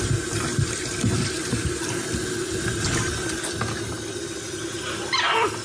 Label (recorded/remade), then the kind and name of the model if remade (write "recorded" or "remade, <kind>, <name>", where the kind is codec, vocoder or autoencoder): recorded